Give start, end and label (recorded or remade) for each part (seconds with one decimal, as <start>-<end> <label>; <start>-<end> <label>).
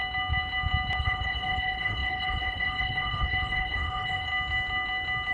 0.0-1.0 recorded; 1.0-4.3 remade; 4.3-5.3 recorded